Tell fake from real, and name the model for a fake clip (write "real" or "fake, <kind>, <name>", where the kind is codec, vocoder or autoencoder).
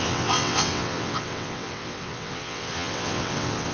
fake, vocoder, WaveNeXt